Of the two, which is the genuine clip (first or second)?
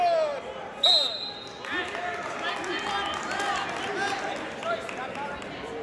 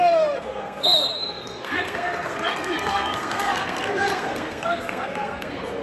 first